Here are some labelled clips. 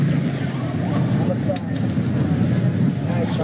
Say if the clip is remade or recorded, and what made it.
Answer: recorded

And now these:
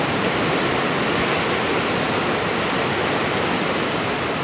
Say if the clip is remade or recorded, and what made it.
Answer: recorded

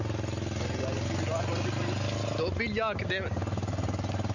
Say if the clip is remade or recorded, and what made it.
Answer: recorded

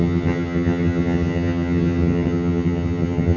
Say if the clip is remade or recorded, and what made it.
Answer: remade, vocoder, HiFi-GAN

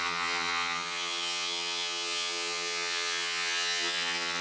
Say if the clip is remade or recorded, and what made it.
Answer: remade, vocoder, HiFi-GAN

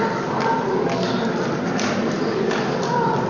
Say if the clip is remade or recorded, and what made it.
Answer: recorded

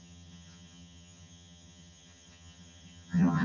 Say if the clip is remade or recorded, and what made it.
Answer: remade, vocoder, HiFi-GAN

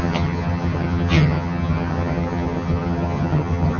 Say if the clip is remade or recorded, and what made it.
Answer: remade, vocoder, HiFi-GAN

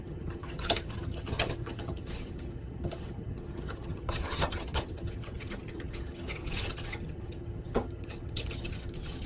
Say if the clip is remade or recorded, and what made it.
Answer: remade, vocoder, HiFi-GAN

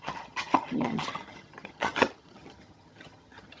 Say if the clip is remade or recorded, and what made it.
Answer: remade, vocoder, HiFi-GAN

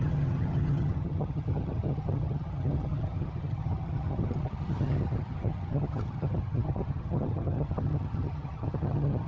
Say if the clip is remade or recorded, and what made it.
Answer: remade, vocoder, HiFi-GAN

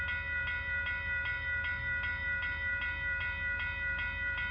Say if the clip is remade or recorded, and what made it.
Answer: recorded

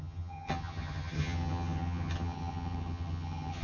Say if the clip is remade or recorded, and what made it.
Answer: remade, vocoder, HiFi-GAN